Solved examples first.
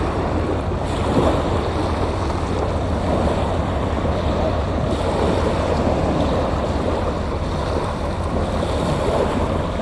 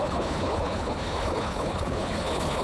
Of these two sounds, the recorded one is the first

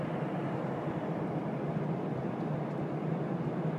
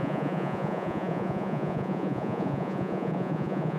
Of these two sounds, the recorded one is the first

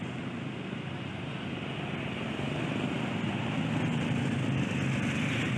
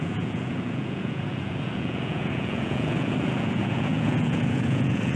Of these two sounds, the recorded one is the first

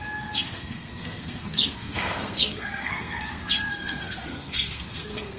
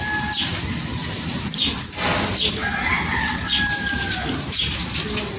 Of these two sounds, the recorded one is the second